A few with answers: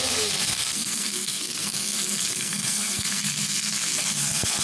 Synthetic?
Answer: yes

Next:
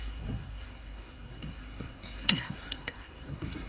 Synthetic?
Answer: yes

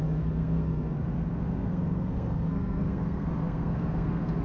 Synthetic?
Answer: yes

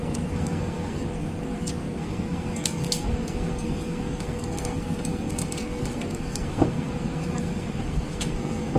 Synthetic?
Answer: yes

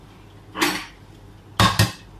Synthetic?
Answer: no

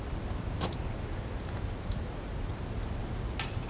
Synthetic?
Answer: no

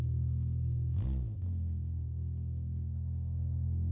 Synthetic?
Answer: yes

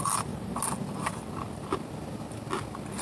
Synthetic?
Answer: no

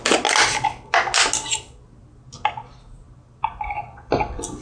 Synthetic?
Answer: no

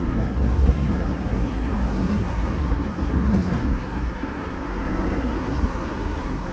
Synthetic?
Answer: yes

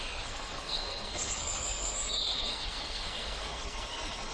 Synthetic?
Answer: yes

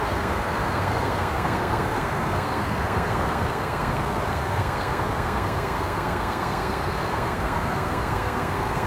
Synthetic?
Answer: yes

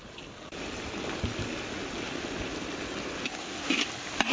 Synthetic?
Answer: no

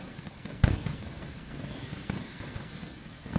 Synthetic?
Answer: yes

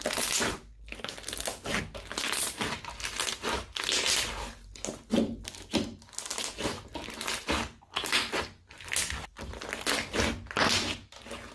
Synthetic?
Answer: no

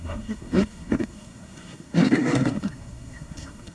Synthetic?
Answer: yes